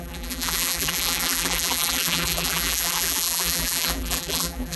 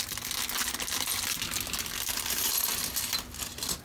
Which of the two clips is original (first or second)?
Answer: second